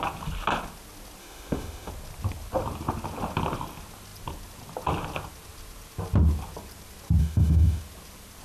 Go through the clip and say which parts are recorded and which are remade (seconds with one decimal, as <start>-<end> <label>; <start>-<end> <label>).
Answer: 0.0-1.2 recorded; 1.2-1.9 remade; 1.9-7.2 recorded; 7.2-7.8 remade; 7.8-8.4 recorded